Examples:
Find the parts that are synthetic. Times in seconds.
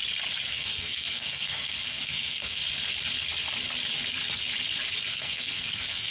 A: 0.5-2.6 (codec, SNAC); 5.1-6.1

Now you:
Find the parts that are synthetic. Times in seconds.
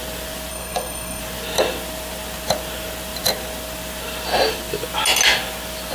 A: 0.5-1.2 (codec, SNAC)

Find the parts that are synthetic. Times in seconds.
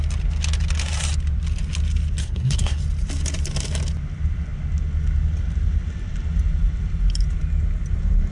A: 2.2-2.8 (codec, SNAC)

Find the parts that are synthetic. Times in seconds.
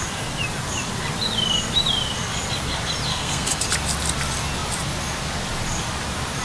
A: 3.1-3.6 (codec, SNAC)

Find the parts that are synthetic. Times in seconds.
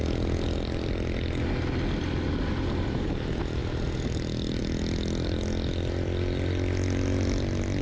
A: none